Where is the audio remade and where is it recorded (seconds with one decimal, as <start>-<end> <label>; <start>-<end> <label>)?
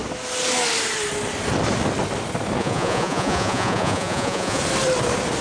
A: 0.0-2.6 recorded; 2.6-4.6 remade; 4.6-5.4 recorded